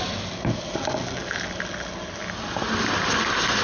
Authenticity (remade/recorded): recorded